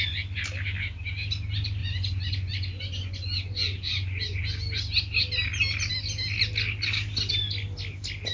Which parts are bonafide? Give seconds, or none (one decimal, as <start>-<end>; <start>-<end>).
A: 0.0-1.8; 4.4-8.3